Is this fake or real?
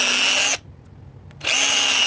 real